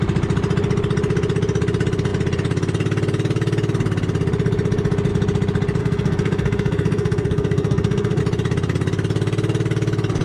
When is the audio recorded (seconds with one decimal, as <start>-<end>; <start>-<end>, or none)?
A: 0.0-5.8; 8.2-10.2